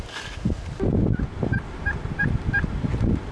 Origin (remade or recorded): recorded